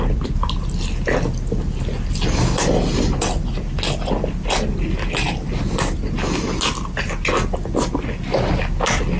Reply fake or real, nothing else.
real